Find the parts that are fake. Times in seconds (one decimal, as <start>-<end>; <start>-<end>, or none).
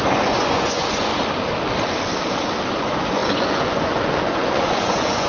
0.0-1.1; 2.7-5.3